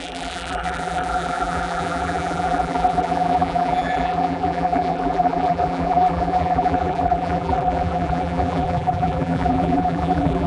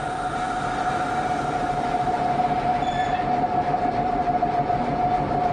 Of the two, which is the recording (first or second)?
second